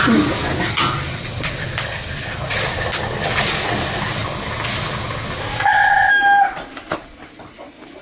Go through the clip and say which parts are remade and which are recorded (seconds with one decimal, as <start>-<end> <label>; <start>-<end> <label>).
0.0-5.4 recorded; 5.4-6.1 remade; 6.1-8.0 recorded